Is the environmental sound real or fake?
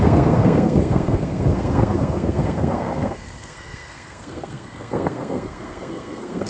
fake